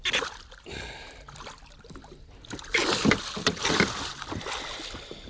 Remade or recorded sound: recorded